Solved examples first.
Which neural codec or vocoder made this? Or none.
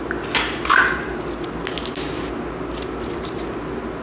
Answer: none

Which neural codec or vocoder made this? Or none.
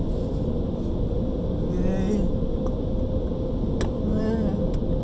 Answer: none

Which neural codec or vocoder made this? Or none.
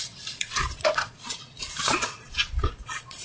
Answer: vocoder, Vocos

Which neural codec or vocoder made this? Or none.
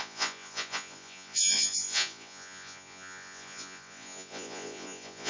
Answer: vocoder, Vocos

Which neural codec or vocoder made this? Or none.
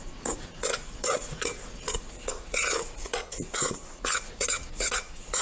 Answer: vocoder, Vocos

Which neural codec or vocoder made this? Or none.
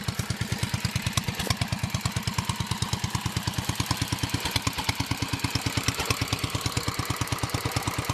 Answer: none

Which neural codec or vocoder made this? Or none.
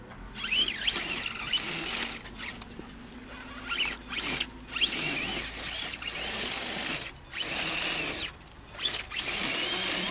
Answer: none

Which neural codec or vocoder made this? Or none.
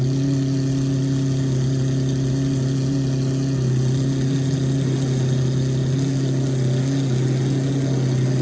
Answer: none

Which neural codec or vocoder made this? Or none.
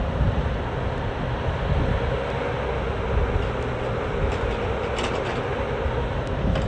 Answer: none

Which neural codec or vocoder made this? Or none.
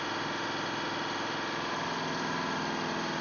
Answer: none